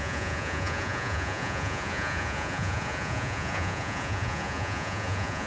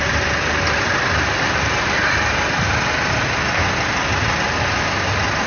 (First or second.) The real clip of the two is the second